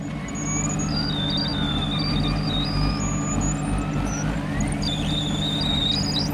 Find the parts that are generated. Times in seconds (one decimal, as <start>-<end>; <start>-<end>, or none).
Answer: none